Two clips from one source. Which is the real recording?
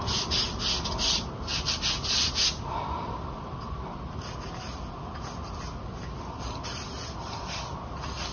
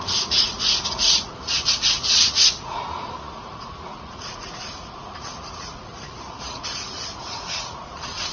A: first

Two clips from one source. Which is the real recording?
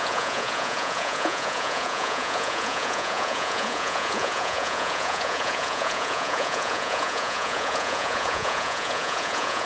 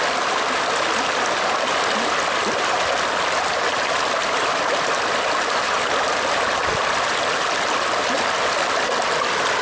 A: second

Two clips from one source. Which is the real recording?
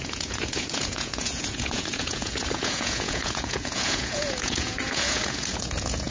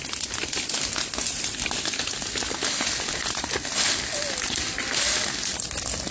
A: second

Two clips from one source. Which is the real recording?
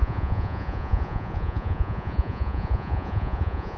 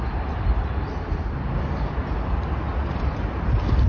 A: second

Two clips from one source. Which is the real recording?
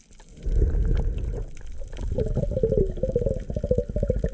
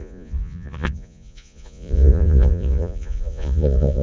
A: first